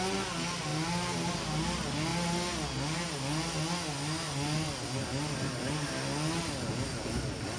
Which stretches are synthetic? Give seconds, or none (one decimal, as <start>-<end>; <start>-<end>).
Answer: 0.7-1.3